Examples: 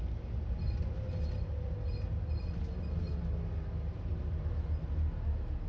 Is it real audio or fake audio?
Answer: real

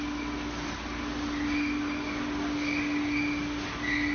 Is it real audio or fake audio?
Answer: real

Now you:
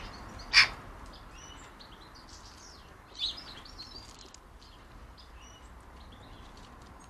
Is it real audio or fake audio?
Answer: real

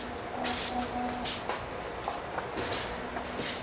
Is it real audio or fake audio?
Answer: real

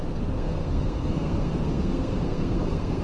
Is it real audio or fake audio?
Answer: fake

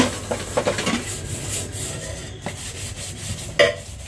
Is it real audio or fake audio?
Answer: real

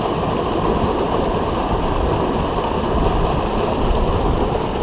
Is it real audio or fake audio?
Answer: real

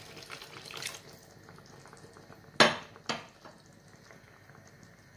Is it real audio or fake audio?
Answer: real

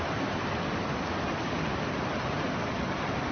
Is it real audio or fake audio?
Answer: real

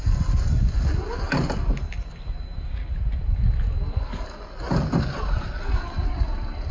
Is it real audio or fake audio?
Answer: real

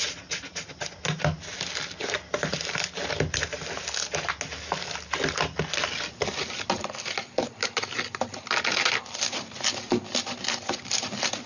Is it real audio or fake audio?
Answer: real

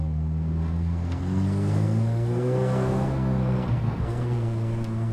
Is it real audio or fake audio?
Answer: fake